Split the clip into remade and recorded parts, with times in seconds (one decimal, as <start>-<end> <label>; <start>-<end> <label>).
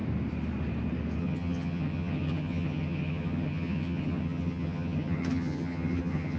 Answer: 0.0-1.2 recorded; 1.2-6.4 remade